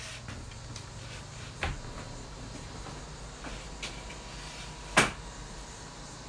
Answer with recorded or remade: recorded